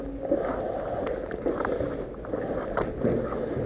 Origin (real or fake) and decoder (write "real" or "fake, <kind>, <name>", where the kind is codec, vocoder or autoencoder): real